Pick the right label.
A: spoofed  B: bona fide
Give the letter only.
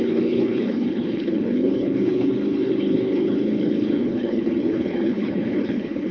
A